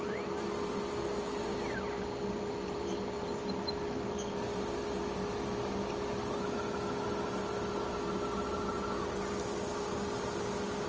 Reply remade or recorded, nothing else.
recorded